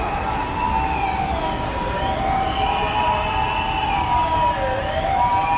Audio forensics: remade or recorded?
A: recorded